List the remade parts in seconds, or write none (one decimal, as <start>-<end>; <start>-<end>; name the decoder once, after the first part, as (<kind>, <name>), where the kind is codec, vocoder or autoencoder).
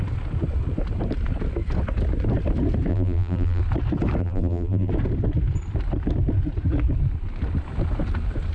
2.9-3.6 (vocoder, BigVGAN v2); 4.2-4.9